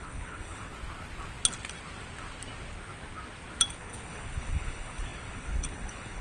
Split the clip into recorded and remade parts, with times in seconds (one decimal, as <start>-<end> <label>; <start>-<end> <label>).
0.0-0.7 remade; 0.7-3.7 recorded; 3.7-6.2 remade